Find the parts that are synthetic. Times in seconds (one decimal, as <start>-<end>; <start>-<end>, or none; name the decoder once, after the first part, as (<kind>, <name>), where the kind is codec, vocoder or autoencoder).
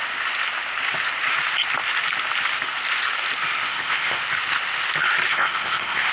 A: 3.7-4.2 (codec, ZipCodec); 5.3-6.1